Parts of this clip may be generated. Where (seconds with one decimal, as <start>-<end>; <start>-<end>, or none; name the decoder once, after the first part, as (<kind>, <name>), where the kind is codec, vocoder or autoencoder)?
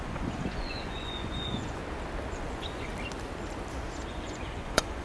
0.0-1.8 (vocoder, Vocos); 2.3-2.9; 4.1-5.0